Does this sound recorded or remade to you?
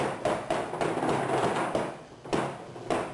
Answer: recorded